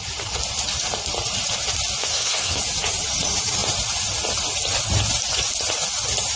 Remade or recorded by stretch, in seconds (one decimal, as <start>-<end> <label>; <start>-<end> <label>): 0.0-2.0 recorded; 2.0-2.6 remade; 2.6-6.4 recorded